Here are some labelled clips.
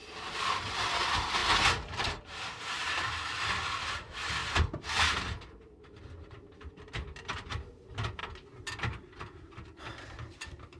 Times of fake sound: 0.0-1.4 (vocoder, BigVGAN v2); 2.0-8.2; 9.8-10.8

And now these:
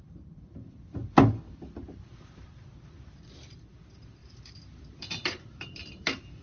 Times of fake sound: 0.0-1.0 (vocoder, BigVGAN v2); 2.1-6.4